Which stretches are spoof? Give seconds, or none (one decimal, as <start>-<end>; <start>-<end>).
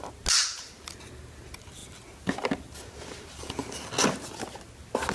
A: none